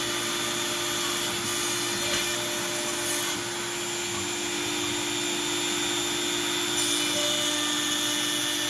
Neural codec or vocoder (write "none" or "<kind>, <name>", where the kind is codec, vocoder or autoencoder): none